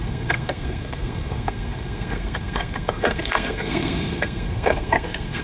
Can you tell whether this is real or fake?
fake